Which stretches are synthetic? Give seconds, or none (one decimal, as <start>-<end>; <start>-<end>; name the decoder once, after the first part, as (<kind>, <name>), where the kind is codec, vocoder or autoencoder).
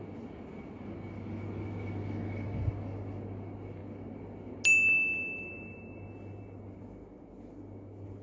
none